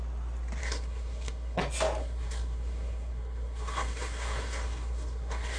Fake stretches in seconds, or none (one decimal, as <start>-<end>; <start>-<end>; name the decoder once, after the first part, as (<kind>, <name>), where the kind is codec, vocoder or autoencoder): 0.6-1.6 (codec, SNAC); 2.0-5.6